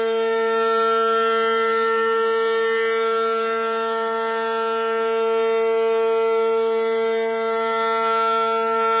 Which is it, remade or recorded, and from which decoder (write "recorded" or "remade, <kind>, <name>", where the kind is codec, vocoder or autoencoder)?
recorded